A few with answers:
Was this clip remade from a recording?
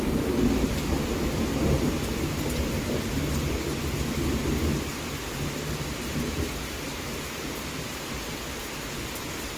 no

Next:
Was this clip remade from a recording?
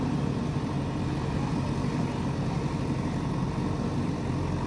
no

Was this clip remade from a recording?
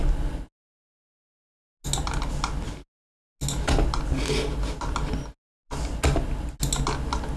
no